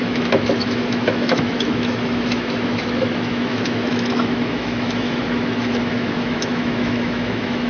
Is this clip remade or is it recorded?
remade